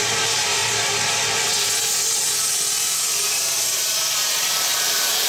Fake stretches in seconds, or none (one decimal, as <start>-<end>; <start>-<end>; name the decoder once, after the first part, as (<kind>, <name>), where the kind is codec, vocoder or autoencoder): 4.7-5.3 (vocoder, BigVGAN v2)